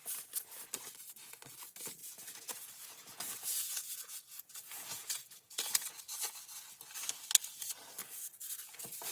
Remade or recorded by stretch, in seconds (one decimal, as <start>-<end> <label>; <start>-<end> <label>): 0.0-2.0 recorded; 2.0-6.7 remade; 6.7-9.1 recorded